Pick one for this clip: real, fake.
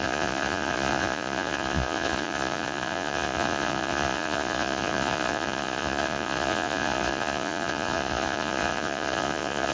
fake